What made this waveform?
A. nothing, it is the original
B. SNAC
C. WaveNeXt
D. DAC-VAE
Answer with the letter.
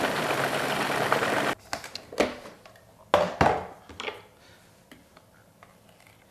A